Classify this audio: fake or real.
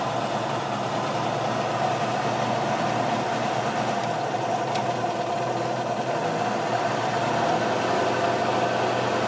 real